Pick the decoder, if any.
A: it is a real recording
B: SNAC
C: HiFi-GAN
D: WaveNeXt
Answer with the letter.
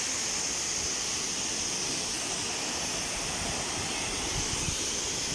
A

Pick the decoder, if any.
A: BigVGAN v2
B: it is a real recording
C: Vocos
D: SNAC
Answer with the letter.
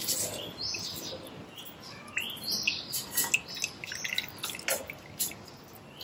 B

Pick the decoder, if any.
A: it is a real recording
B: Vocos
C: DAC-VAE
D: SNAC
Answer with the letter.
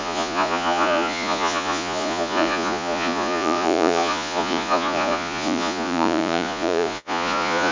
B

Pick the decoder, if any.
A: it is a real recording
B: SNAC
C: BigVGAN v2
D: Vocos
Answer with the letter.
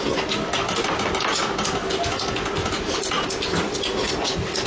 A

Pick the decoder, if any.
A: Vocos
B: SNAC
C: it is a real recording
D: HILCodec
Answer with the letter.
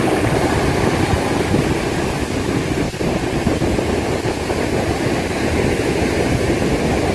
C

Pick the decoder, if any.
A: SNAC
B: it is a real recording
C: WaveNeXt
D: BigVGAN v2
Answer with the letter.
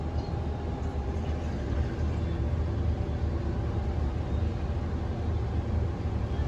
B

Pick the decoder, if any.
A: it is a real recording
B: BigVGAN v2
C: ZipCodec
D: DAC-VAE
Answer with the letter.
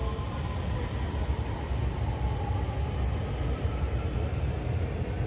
A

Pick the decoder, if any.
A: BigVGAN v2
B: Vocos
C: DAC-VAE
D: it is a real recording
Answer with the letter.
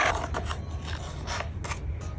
D